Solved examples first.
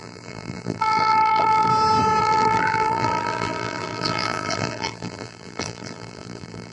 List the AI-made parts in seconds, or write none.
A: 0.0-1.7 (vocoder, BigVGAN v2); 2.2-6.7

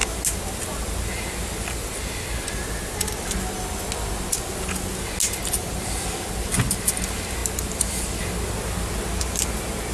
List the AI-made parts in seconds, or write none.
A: none

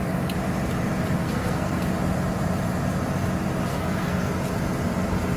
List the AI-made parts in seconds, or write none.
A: 1.2-1.9 (codec, SNAC); 3.7-4.3

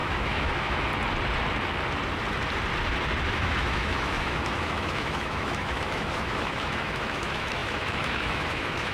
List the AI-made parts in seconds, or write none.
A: 0.0-0.9 (autoencoder, DAC-VAE); 3.3-8.9

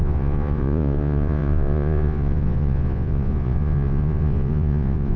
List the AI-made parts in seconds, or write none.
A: 0.0-5.2 (vocoder, Vocos)